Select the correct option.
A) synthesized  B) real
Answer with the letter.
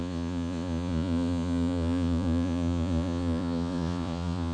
A